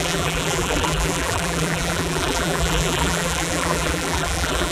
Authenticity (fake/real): fake